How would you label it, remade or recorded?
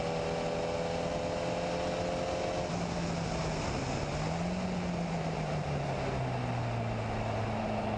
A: recorded